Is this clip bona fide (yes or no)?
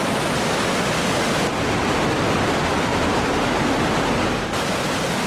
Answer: yes